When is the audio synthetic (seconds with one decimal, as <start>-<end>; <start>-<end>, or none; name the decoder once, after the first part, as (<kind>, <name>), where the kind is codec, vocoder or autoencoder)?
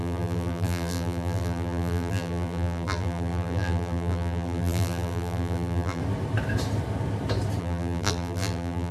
0.0-6.0 (vocoder, BigVGAN v2); 7.6-8.9